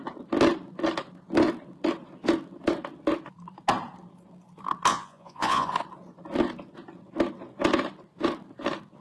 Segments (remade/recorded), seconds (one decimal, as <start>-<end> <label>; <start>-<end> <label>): 0.0-4.9 recorded; 4.9-5.7 remade; 5.7-9.0 recorded